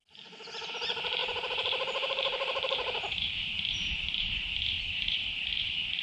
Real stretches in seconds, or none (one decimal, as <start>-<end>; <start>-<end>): 0.0-0.7